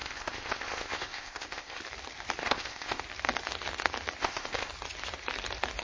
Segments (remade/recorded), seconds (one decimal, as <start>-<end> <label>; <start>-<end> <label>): 0.0-1.8 remade; 1.8-2.4 recorded; 2.4-3.0 remade; 3.0-4.2 recorded; 4.2-4.7 remade; 4.7-5.8 recorded